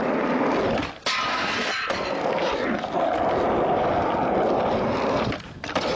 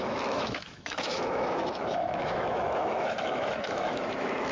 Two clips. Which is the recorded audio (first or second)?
first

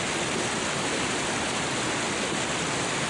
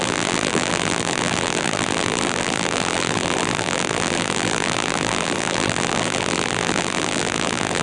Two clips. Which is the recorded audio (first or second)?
first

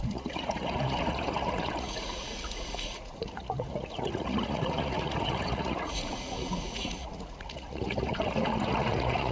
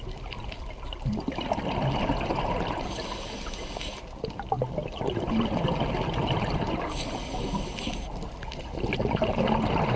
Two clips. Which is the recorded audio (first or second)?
second